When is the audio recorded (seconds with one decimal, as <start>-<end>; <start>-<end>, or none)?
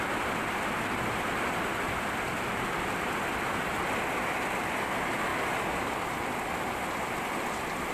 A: 0.0-7.9